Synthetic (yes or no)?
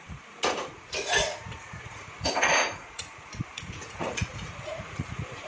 yes